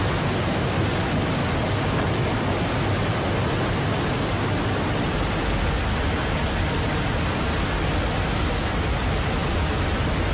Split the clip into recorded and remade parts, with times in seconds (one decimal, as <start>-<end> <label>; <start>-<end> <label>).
0.0-10.3 recorded